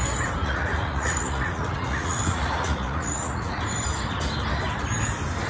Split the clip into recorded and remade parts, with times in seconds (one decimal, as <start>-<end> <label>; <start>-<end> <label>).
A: 0.0-0.4 recorded; 0.4-3.6 remade; 3.6-5.5 recorded